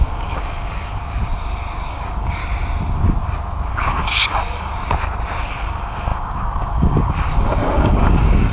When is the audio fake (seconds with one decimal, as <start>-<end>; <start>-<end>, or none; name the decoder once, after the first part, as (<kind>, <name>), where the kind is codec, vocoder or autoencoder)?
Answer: 0.0-1.0 (codec, DAC); 1.9-2.4; 3.7-4.7; 5.6-8.5